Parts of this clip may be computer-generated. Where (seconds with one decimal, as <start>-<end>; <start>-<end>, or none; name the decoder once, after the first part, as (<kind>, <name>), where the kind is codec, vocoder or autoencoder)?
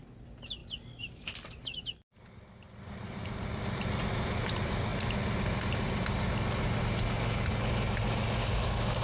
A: 8.4-9.0 (codec, DAC)